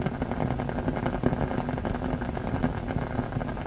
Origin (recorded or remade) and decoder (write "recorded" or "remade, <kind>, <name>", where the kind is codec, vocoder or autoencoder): recorded